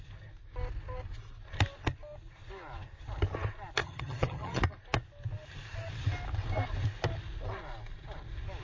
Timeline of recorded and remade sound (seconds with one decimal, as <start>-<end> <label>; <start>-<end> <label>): 0.0-3.8 recorded; 3.8-4.6 remade; 4.6-8.6 recorded